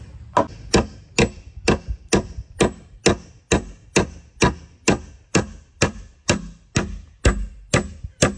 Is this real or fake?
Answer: real